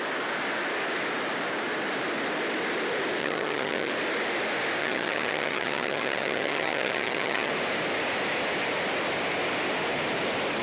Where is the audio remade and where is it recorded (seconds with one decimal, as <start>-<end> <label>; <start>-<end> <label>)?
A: 0.0-3.2 recorded; 3.2-3.9 remade; 3.9-4.8 recorded; 4.8-7.5 remade; 7.5-10.6 recorded